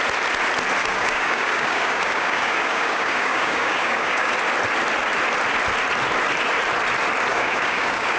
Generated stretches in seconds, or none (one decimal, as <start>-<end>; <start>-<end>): 0.8-4.3; 7.3-8.2